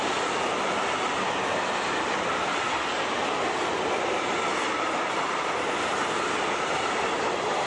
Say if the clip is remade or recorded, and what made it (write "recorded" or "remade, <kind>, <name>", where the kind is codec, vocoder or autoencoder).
recorded